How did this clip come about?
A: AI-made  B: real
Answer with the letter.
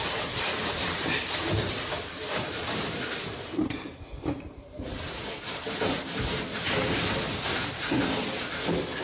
A